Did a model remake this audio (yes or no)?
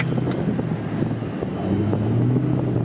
no